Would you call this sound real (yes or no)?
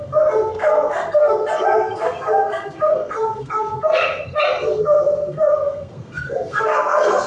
no